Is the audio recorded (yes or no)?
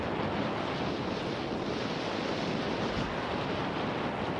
yes